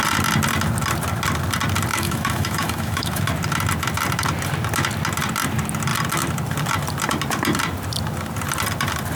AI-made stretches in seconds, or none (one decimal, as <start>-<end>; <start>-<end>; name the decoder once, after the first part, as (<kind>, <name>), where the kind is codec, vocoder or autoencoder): 1.9-3.2 (autoencoder, DAC-VAE)